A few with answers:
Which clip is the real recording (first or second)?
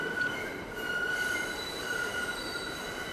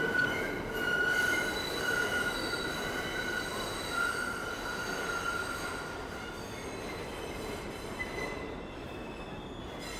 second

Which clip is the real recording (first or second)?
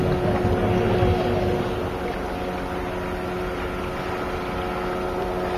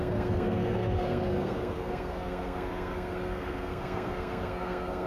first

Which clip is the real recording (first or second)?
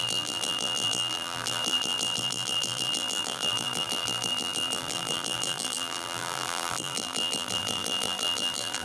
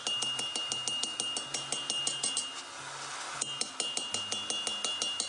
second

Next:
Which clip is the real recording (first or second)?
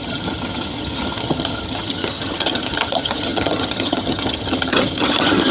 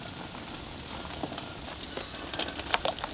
second